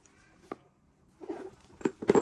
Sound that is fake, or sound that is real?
real